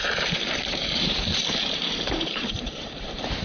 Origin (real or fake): fake